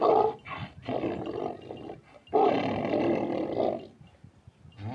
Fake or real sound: real